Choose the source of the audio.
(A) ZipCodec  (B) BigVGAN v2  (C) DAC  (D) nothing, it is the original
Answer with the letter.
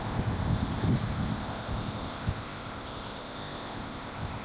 A